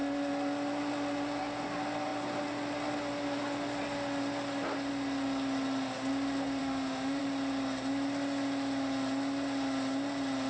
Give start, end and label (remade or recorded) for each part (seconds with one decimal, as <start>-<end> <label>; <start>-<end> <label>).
0.0-6.6 recorded; 6.6-7.2 remade; 7.2-10.5 recorded